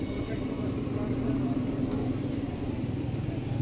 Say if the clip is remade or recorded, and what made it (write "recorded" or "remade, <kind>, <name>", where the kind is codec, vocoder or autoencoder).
remade, vocoder, BigVGAN v2